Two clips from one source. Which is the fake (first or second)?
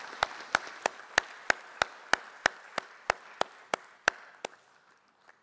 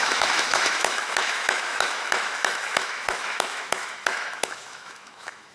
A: second